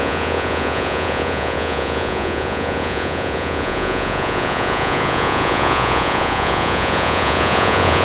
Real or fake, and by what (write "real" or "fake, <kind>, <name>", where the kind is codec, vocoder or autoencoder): fake, vocoder, Vocos